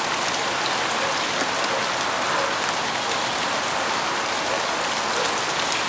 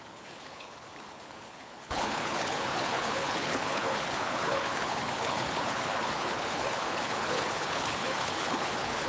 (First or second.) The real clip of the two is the first